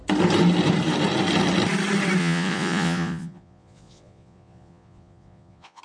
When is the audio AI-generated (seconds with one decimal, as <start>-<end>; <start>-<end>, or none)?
2.2-5.8